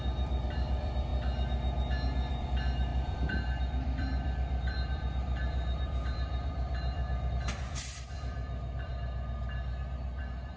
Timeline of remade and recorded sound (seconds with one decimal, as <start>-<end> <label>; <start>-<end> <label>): 0.0-1.1 remade; 1.1-2.3 recorded; 2.3-8.9 remade; 8.9-10.2 recorded; 10.2-10.6 remade